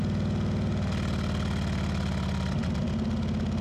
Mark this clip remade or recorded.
recorded